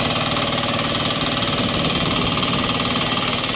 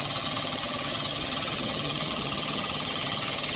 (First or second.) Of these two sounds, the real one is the first